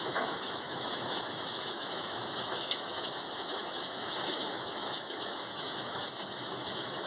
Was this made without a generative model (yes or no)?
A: no